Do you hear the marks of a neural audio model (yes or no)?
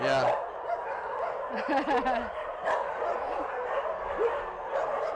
no